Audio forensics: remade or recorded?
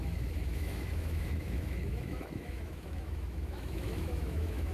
remade